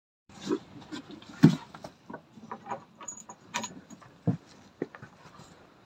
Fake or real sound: fake